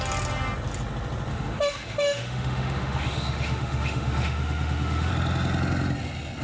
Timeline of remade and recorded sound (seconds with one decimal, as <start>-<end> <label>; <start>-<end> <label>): 0.0-1.3 recorded; 1.3-5.1 remade; 5.1-6.4 recorded